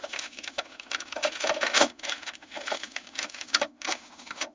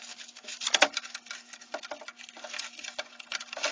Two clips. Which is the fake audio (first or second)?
first